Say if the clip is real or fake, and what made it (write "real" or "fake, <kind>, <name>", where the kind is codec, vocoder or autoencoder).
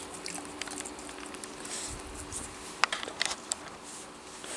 real